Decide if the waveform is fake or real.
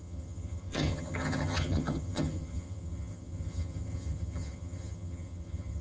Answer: fake